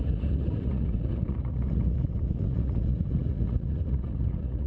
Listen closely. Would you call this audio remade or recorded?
remade